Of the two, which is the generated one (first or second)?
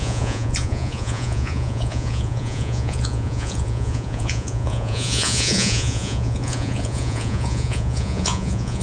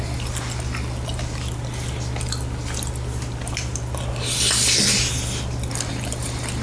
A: first